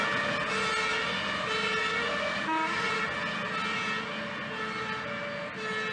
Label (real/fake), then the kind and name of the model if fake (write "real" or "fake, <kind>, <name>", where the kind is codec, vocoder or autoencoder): real